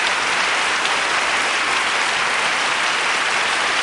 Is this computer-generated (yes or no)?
no